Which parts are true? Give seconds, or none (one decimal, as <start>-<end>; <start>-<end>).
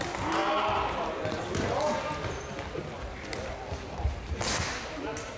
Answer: 0.0-5.4